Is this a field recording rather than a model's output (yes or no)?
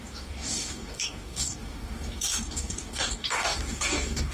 no